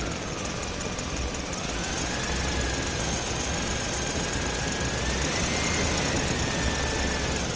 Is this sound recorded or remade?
recorded